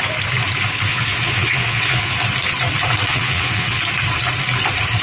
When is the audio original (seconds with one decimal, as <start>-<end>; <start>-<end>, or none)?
0.0-0.9; 2.2-3.1; 3.8-5.0